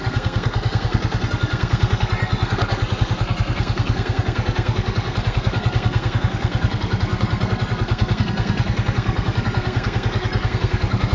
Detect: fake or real fake